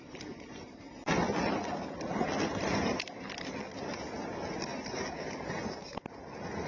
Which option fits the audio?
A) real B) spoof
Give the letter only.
A